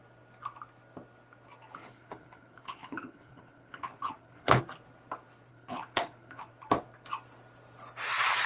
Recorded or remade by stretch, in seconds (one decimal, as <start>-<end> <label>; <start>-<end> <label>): 0.0-1.8 recorded; 1.8-4.6 remade; 4.6-5.5 recorded; 5.5-6.5 remade; 6.5-8.5 recorded